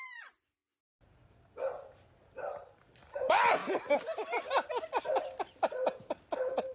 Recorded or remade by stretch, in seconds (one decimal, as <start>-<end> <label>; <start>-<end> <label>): 0.0-0.6 remade; 0.6-3.1 recorded; 3.1-3.6 remade; 3.6-5.0 recorded; 5.0-6.7 remade